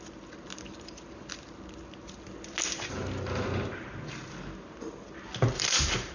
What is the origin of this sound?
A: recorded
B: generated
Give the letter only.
A